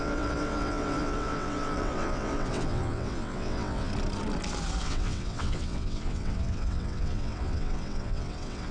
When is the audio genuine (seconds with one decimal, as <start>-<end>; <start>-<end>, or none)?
3.9-4.8